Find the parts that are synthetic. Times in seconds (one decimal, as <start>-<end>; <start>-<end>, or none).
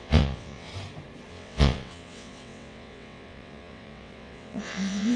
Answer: 0.0-0.7; 1.3-5.2